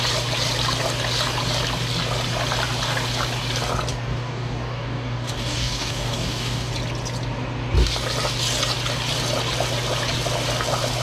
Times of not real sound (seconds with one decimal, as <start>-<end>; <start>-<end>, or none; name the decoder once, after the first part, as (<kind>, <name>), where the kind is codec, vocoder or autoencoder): 3.9-6.7 (codec, DAC)